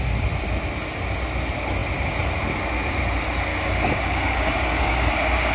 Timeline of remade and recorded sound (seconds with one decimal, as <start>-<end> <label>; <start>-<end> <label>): 0.0-3.5 recorded; 3.5-5.1 remade; 5.1-5.5 recorded